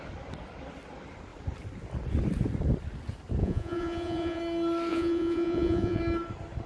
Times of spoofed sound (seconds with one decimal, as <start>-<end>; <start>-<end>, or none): 3.4-4.4; 4.9-6.0

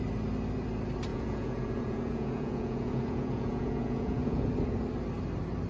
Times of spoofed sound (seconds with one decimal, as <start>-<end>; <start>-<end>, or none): 1.1-4.5

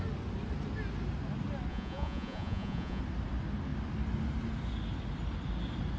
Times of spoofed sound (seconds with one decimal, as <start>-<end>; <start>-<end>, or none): 1.7-3.0

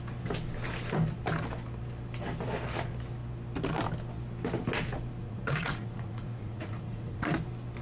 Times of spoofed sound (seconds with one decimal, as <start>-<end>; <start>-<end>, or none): 5.2-7.3

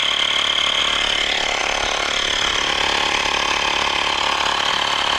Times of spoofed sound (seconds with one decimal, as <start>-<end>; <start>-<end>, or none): none

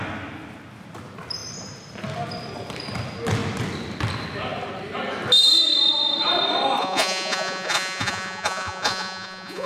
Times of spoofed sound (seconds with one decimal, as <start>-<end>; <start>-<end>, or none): 6.8-9.7

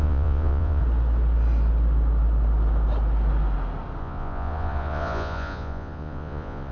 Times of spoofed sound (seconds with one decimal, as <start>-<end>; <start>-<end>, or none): 0.0-0.8; 4.0-6.7